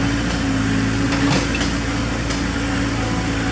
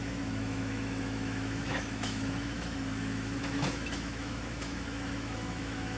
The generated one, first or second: second